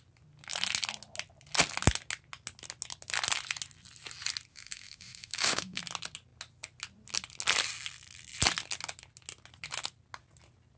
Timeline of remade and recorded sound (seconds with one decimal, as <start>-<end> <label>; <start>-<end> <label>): 0.0-4.5 recorded; 4.5-5.8 remade; 5.8-10.8 recorded